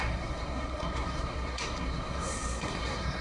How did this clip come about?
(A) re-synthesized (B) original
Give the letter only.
A